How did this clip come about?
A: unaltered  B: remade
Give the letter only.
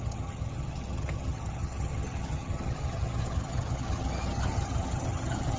B